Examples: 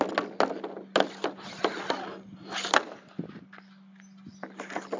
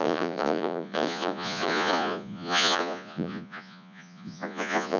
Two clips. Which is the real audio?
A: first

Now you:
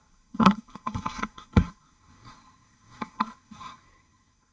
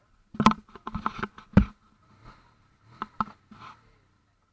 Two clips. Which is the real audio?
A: second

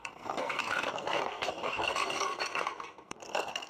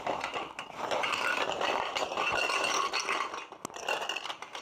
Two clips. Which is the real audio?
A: second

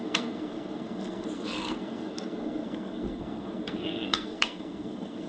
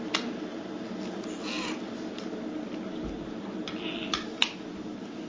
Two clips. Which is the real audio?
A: second